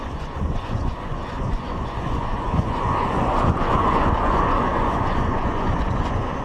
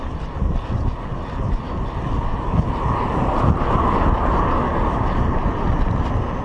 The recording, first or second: second